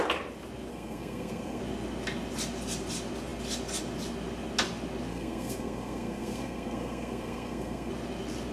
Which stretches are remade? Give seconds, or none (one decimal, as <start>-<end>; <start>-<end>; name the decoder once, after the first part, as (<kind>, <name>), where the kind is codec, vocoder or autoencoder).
0.7-1.6 (codec, SNAC); 5.1-7.9